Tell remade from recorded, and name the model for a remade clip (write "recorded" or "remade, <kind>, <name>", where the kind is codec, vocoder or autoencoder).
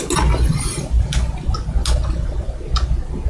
recorded